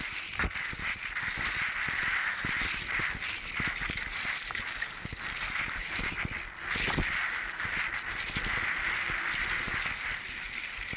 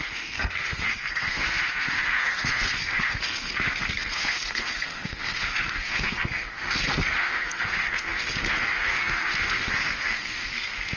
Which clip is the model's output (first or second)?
second